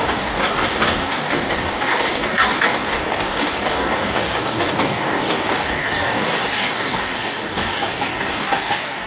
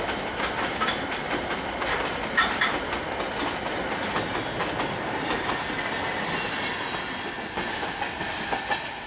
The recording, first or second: second